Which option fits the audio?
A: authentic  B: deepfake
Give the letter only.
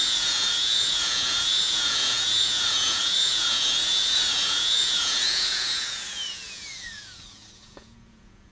B